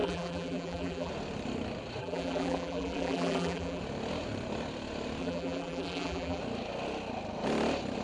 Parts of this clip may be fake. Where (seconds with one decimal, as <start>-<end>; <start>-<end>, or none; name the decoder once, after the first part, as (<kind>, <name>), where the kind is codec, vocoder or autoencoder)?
0.0-1.1 (vocoder, BigVGAN v2); 2.0-3.8; 5.2-6.4